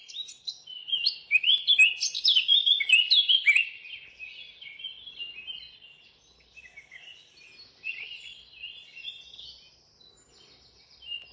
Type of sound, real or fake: real